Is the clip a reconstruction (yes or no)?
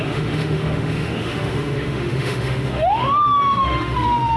yes